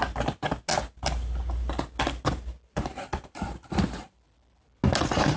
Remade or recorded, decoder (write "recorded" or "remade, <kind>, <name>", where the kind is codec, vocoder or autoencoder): recorded